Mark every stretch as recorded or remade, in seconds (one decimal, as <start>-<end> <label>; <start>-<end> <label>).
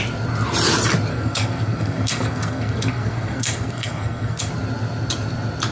0.0-1.1 recorded; 1.1-4.5 remade; 4.5-5.7 recorded